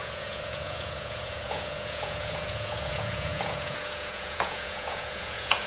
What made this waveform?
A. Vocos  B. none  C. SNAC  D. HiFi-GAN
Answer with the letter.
A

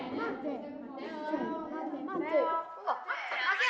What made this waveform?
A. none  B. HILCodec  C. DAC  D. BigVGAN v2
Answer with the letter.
A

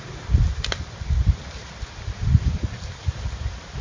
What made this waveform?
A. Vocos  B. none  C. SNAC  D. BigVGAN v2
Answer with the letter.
B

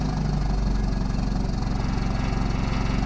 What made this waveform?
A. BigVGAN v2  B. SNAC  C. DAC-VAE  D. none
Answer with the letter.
D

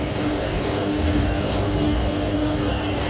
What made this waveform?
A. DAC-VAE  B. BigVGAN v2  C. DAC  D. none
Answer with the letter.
C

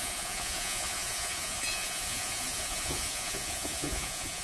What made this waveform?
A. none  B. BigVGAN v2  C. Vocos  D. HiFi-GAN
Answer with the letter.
C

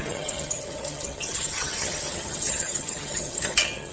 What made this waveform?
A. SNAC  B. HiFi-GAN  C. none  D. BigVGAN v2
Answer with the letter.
B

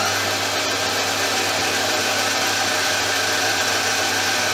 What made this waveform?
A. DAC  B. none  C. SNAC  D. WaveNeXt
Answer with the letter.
B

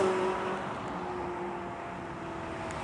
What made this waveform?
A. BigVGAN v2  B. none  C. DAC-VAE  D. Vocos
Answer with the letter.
B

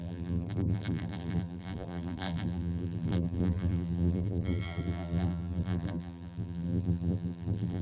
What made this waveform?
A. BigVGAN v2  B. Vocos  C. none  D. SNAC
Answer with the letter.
A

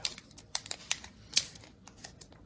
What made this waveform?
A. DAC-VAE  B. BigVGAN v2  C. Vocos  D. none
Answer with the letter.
B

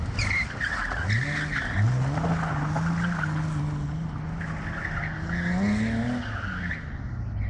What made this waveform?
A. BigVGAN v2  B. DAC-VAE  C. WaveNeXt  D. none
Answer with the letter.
D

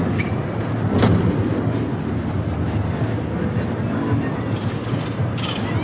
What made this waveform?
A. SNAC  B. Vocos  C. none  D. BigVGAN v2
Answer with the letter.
C